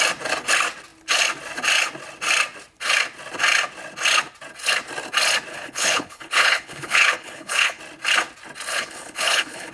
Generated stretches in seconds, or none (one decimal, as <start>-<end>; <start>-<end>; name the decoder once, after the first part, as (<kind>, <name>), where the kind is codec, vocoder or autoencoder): 5.5-7.8 (codec, HILCodec); 8.7-9.7